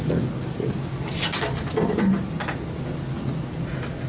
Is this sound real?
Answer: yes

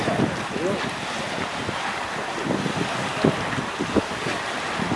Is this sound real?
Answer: yes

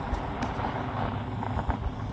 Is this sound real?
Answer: yes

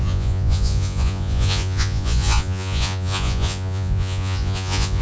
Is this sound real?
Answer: no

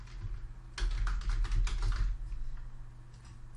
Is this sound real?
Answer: yes